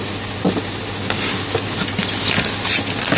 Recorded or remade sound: recorded